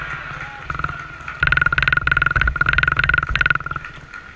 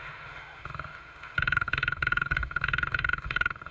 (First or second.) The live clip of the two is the first